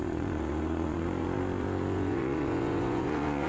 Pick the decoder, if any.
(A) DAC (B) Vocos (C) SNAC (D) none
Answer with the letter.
B